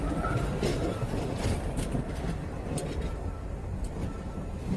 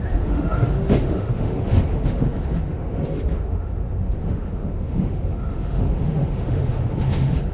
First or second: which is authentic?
first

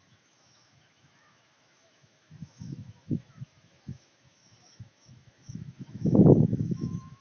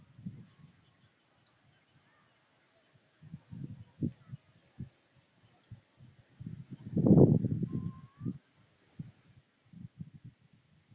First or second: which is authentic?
second